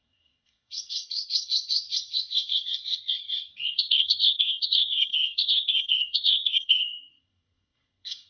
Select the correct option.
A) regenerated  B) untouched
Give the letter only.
A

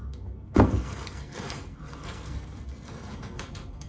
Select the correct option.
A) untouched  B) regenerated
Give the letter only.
B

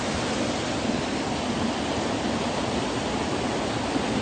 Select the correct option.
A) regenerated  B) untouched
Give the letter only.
B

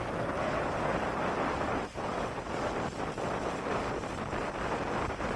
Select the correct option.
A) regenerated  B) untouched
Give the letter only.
B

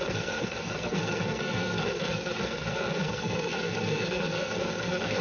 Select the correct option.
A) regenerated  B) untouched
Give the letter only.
A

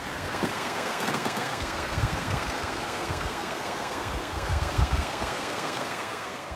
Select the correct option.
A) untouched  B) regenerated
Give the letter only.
B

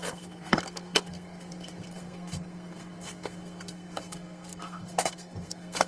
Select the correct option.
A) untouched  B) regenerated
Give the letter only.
B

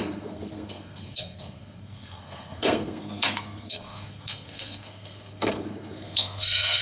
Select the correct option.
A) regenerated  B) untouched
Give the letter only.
A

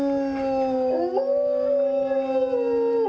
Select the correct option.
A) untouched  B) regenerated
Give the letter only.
A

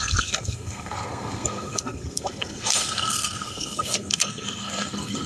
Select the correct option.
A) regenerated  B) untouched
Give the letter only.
A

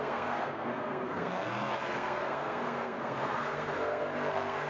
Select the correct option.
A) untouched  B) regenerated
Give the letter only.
B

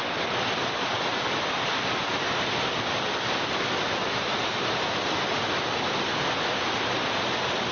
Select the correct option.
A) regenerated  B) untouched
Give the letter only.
B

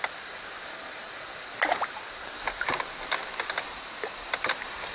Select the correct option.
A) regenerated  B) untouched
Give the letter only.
B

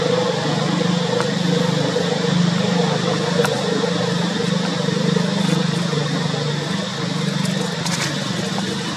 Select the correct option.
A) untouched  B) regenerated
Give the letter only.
A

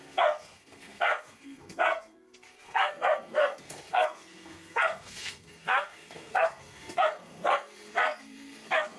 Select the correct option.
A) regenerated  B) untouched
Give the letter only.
A